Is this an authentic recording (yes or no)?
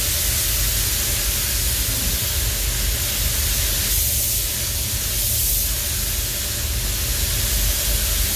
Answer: yes